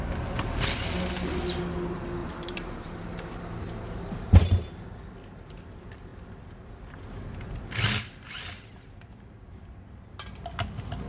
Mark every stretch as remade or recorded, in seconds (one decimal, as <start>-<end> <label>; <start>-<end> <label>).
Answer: 0.0-2.2 recorded; 2.2-3.0 remade; 3.0-11.1 recorded